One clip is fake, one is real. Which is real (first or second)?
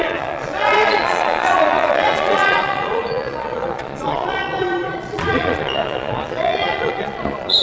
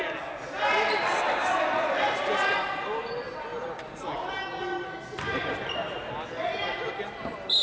second